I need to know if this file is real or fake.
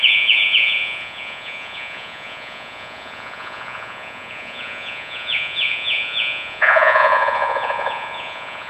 fake